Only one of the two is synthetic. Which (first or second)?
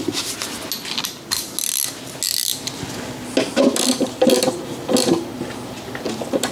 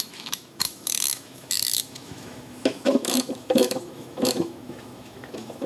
second